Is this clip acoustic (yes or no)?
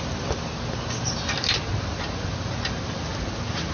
yes